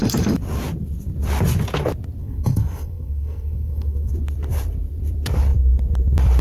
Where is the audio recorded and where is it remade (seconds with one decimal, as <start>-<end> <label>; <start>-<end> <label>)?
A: 0.0-2.2 recorded; 2.2-4.1 remade; 4.1-6.4 recorded